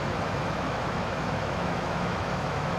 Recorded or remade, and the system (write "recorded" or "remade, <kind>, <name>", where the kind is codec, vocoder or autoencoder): remade, autoencoder, DAC-VAE